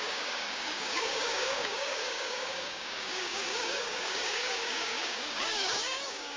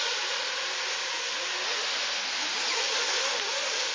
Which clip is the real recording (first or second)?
second